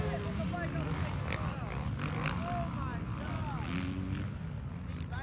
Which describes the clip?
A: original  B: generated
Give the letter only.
A